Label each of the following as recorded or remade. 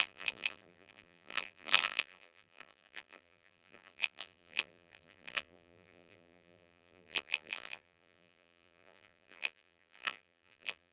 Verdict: remade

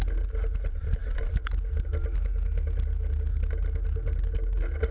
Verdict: recorded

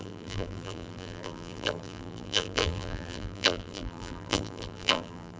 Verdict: remade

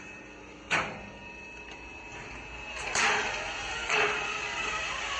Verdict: recorded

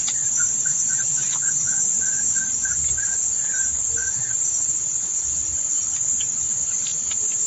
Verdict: remade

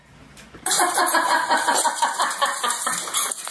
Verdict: remade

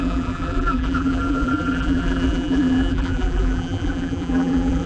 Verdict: remade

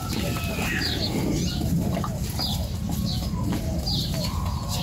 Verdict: recorded